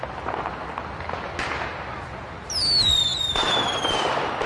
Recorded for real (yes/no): yes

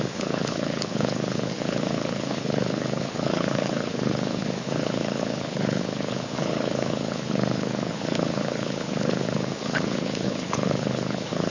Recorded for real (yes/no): no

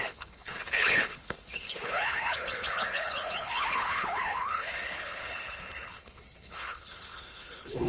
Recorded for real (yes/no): no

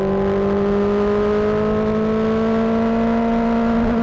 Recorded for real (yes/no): yes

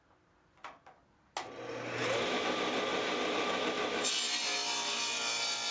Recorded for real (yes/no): yes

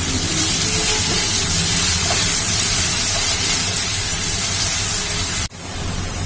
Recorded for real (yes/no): yes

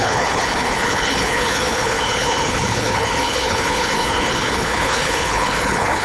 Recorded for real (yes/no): no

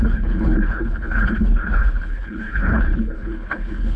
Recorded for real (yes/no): no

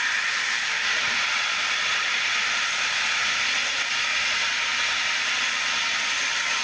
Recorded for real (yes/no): yes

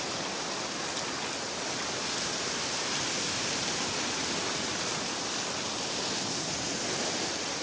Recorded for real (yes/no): yes